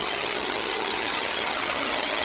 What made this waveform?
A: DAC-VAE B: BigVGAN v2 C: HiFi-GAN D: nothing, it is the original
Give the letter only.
C